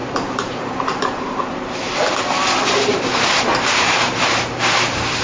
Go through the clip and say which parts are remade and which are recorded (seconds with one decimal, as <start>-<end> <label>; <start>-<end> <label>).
0.0-2.1 remade; 2.1-2.9 recorded; 2.9-5.2 remade